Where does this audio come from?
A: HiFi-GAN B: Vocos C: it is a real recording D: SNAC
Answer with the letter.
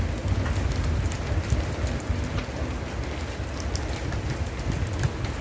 C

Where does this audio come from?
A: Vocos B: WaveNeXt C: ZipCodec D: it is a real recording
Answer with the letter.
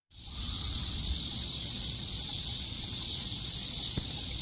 A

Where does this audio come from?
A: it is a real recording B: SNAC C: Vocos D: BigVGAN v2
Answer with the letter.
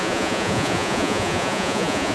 C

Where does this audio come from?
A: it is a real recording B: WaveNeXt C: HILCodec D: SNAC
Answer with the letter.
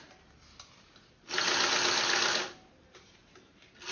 A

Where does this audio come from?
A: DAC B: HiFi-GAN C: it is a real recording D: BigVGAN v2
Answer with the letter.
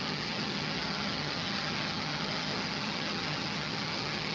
B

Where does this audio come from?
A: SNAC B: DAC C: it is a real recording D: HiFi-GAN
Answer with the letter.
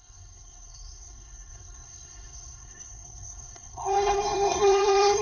A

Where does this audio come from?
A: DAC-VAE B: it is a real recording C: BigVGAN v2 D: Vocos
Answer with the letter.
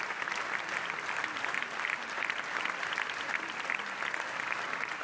B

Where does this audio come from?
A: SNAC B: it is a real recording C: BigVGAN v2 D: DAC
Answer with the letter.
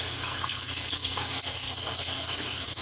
A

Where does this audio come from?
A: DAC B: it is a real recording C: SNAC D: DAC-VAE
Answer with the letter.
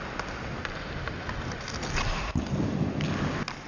B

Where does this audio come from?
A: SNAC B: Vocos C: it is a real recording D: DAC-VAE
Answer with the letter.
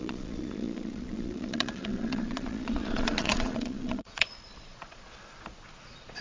B